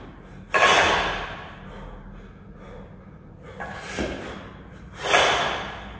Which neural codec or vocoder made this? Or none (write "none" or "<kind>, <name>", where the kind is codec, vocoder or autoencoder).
none